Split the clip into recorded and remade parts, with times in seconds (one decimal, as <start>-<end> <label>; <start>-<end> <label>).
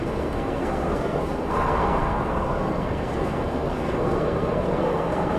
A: 0.0-5.4 remade